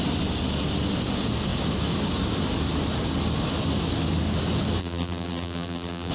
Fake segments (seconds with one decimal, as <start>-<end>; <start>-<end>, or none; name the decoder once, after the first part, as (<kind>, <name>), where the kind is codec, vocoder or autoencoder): 4.8-6.1 (vocoder, BigVGAN v2)